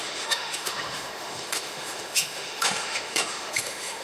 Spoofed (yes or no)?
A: yes